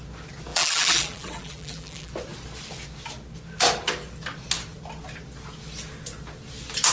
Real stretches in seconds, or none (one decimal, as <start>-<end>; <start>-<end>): 0.0-0.5; 2.1-6.9